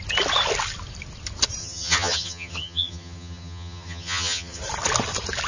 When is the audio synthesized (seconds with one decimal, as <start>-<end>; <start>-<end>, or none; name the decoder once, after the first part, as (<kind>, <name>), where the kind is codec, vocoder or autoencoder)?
1.6-4.6 (vocoder, HiFi-GAN)